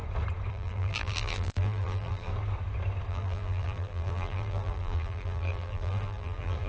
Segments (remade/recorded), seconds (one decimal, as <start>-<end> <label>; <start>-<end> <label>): 0.0-0.5 recorded; 0.5-2.3 remade; 2.3-3.1 recorded; 3.1-6.7 remade